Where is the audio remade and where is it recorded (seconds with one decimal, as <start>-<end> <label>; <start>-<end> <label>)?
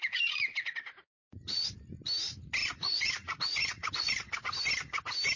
0.0-1.8 remade; 1.8-2.6 recorded; 2.6-4.1 remade; 4.1-5.4 recorded